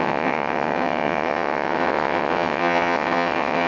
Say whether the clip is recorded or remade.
remade